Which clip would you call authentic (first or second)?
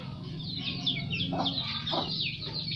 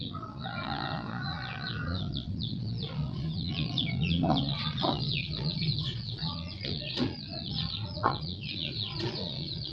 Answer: first